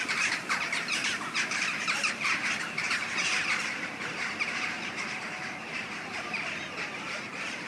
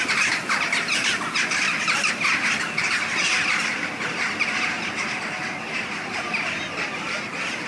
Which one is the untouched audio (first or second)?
second